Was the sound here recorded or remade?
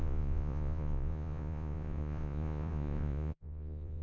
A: remade